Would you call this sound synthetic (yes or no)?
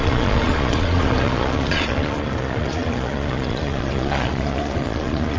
yes